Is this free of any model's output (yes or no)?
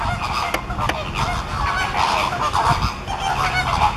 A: yes